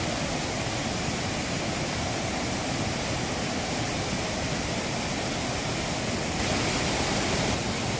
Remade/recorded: recorded